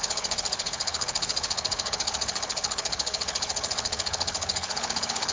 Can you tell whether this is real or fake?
fake